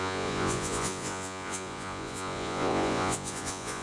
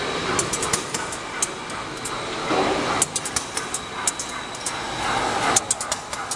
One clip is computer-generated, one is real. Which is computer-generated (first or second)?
first